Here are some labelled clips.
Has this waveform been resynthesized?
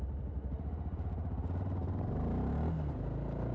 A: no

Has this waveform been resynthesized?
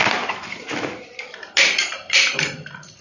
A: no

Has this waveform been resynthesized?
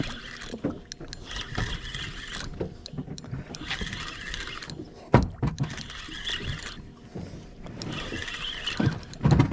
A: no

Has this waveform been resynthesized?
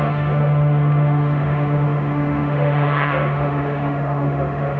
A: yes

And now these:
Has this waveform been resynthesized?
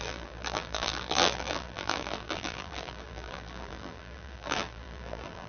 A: yes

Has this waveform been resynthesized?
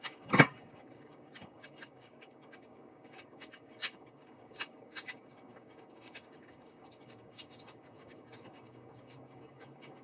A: yes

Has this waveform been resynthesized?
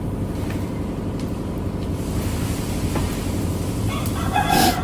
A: no